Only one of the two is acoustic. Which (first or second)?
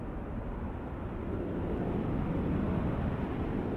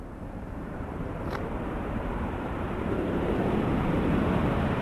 first